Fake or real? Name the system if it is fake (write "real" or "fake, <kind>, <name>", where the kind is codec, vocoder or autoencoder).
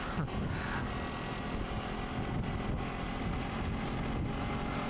real